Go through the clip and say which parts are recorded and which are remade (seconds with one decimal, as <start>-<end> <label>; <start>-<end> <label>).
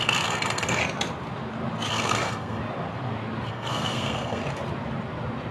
0.0-0.8 remade; 0.8-1.9 recorded; 1.9-2.6 remade; 2.6-3.5 recorded; 3.5-4.4 remade; 4.4-5.5 recorded